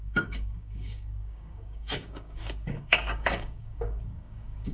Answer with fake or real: fake